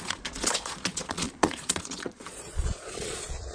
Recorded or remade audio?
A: remade